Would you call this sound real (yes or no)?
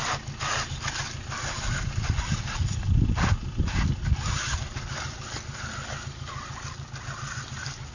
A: yes